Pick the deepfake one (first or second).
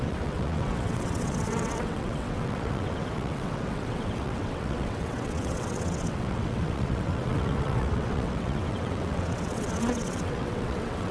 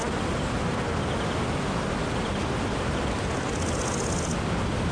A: first